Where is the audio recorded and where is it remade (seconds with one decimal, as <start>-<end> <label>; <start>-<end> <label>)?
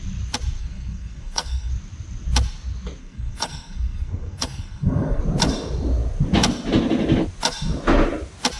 0.0-0.6 recorded; 0.6-1.7 remade; 1.7-3.0 recorded; 3.0-5.2 remade; 5.2-8.6 recorded